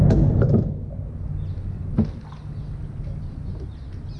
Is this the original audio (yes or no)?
yes